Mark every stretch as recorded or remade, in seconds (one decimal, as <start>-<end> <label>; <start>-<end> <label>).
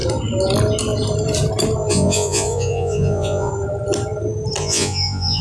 0.0-1.9 recorded; 1.9-3.5 remade; 3.5-4.6 recorded; 4.6-5.4 remade